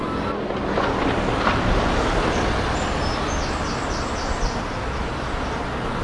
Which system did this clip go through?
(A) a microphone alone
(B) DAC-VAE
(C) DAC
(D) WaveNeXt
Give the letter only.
A